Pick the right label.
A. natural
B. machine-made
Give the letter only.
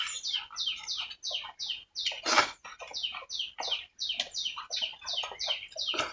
A